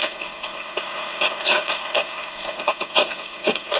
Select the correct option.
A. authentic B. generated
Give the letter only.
B